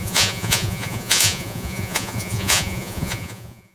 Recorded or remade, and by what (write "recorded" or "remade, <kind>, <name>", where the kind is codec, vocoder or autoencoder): remade, vocoder, Vocos